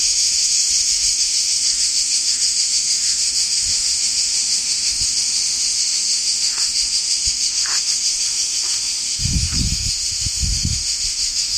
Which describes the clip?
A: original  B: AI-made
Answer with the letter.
B